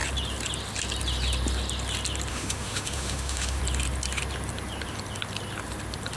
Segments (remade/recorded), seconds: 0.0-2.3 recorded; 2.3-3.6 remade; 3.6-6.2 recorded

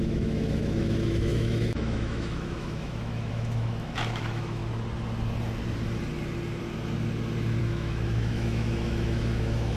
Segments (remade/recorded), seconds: 0.0-4.6 remade; 4.6-7.6 recorded; 7.6-9.8 remade

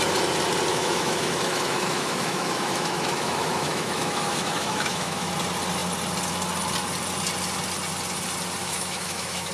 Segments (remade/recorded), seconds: 0.0-0.7 recorded; 0.7-5.3 remade; 5.3-8.6 recorded; 8.6-9.5 remade

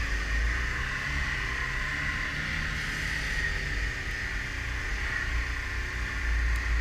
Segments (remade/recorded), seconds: 0.0-6.8 recorded

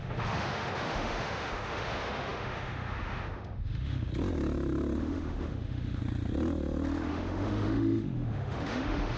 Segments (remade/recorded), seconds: 0.0-4.1 remade; 4.1-5.0 recorded; 5.0-6.0 remade; 6.0-7.1 recorded; 7.1-9.2 remade

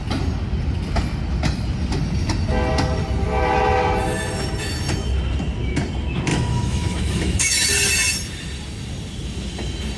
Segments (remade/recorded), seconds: 0.0-6.3 recorded; 6.3-7.7 remade; 7.7-10.0 recorded

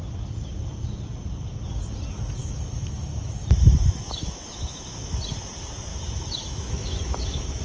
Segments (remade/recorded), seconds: 0.0-2.4 recorded; 2.4-5.2 remade; 5.2-5.9 recorded; 5.9-7.6 remade

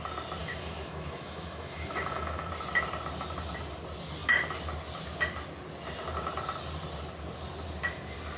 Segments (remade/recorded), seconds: 0.0-0.4 recorded; 0.4-2.5 remade; 2.5-8.4 recorded